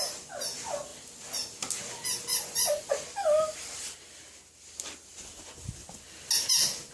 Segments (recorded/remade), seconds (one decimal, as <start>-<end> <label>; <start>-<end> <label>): 0.0-2.3 recorded; 2.3-2.9 remade; 2.9-6.9 recorded